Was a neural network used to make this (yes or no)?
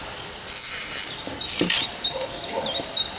no